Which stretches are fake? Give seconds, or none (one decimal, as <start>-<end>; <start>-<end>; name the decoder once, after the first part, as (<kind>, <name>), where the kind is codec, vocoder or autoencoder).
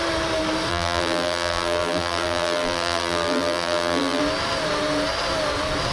0.7-4.2 (vocoder, BigVGAN v2)